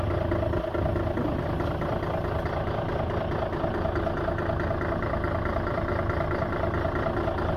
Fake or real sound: real